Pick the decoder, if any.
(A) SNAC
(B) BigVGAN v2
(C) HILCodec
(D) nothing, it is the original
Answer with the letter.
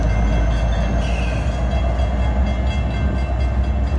D